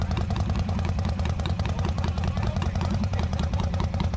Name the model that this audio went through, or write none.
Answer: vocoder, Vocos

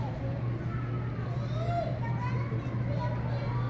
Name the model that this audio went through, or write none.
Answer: none